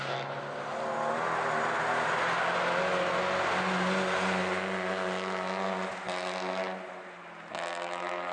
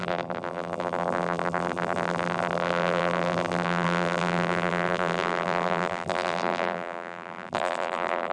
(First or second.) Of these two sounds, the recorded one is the first